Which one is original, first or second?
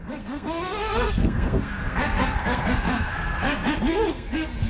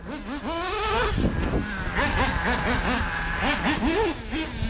second